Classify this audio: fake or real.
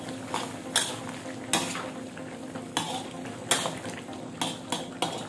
real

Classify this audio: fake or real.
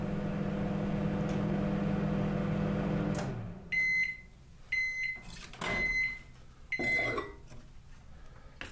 real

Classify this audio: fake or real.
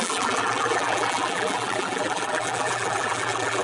fake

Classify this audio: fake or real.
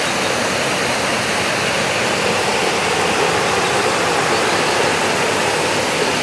real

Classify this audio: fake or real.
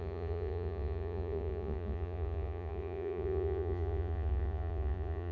fake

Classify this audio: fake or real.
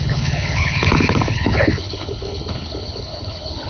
fake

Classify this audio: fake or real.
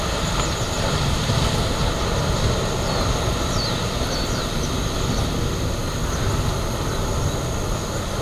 real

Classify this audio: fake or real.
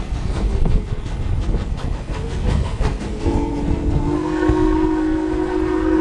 fake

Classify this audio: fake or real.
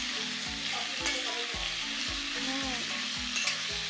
real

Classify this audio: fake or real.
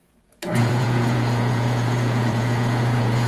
fake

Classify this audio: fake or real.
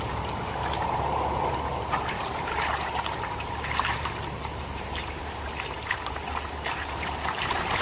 fake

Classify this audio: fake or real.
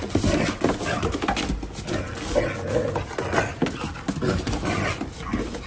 real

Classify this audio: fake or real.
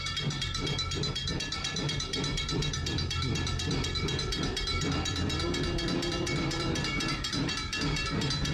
fake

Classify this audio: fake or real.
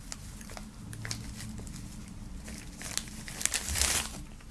real